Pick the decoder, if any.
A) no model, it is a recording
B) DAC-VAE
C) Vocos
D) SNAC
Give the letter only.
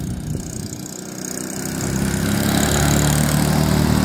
A